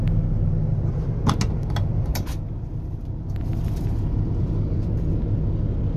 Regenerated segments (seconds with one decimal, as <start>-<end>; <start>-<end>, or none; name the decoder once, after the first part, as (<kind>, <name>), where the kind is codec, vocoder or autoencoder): 2.1-5.1 (vocoder, BigVGAN v2)